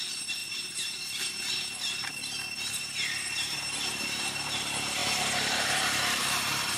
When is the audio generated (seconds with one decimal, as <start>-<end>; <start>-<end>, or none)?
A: none